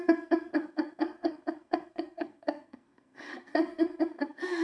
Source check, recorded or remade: remade